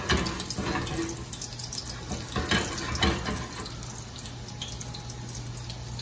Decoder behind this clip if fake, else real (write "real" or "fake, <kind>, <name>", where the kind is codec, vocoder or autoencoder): real